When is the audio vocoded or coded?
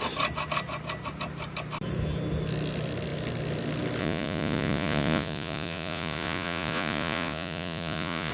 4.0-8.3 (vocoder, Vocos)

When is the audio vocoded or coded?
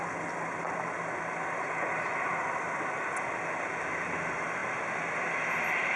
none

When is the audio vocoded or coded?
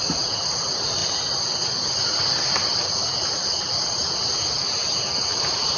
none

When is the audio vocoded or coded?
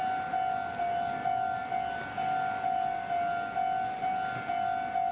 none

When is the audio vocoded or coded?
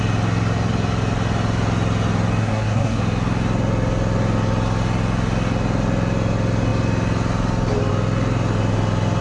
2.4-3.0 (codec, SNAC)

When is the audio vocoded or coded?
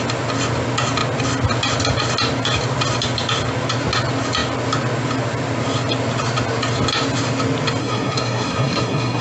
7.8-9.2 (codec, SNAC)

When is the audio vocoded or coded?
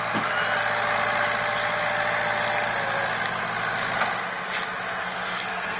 5.0-5.8 (codec, SNAC)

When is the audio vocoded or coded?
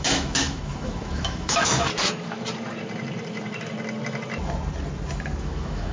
0.0-1.9 (autoencoder, DAC-VAE); 5.4-5.9